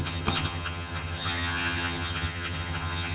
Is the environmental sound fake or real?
fake